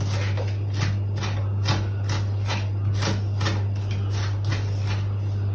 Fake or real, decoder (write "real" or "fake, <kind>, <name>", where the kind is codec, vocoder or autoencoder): real